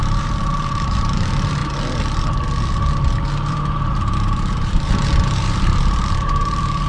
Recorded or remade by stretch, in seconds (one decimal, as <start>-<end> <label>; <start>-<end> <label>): 0.0-1.6 remade; 1.6-3.5 recorded; 3.5-6.9 remade